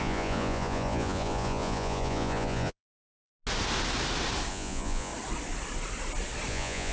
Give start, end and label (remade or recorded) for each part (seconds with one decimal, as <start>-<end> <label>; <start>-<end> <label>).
0.0-3.3 remade; 3.3-4.5 recorded; 4.5-5.1 remade; 5.1-6.5 recorded; 6.5-6.9 remade